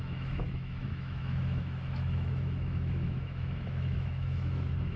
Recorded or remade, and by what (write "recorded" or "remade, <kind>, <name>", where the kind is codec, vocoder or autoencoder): remade, autoencoder, DAC-VAE